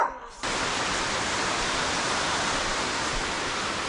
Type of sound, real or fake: real